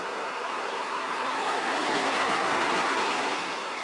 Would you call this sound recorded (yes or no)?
no